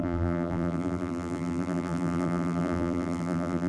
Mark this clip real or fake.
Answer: fake